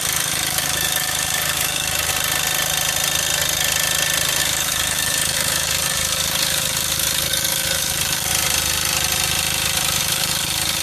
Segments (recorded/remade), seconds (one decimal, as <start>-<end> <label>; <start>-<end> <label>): 0.0-2.1 remade; 2.1-4.4 recorded; 4.4-8.3 remade; 8.3-10.0 recorded; 10.0-10.8 remade